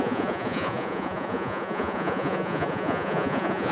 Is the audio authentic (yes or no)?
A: no